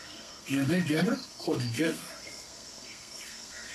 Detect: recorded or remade remade